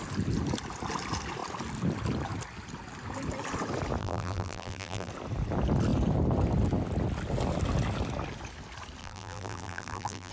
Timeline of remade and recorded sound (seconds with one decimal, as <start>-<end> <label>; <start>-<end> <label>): 0.0-4.0 recorded; 4.0-5.1 remade; 5.1-9.0 recorded; 9.0-10.3 remade